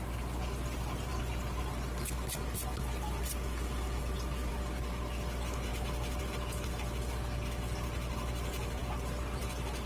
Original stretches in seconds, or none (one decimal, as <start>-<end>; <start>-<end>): 0.0-9.9